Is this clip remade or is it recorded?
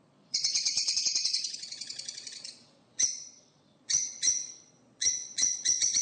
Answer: remade